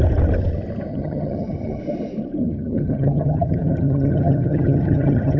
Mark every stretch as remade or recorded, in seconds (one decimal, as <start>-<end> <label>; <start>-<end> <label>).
0.0-0.9 recorded; 0.9-1.8 remade; 1.8-2.4 recorded; 2.4-5.4 remade